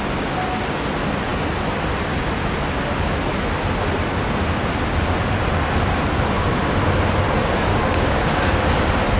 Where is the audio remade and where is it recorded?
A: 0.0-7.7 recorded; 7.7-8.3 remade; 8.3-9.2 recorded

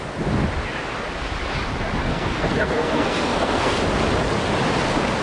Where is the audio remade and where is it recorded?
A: 0.0-2.0 recorded; 2.0-3.7 remade; 3.7-5.2 recorded

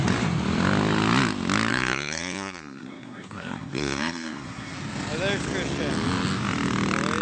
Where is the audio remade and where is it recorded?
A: 0.0-1.7 recorded; 1.7-4.7 remade; 4.7-7.2 recorded

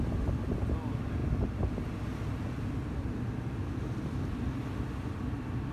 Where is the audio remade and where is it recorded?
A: 0.0-5.7 recorded

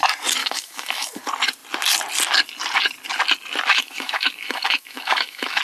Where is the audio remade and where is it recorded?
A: 0.0-0.4 recorded; 0.4-1.2 remade; 1.2-3.7 recorded; 3.7-5.6 remade

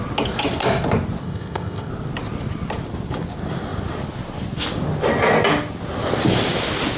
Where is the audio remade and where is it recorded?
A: 0.0-1.2 recorded; 1.2-1.9 remade; 1.9-7.0 recorded

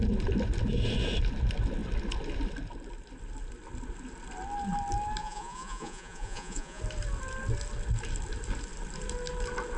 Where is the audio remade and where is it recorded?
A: 0.0-5.2 recorded; 5.2-6.8 remade; 6.8-9.8 recorded

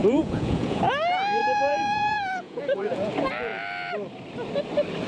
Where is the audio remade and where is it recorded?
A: 0.0-0.8 remade; 0.8-1.4 recorded; 1.4-3.1 remade; 3.1-5.1 recorded